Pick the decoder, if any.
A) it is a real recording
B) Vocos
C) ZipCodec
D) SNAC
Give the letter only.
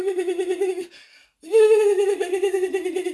A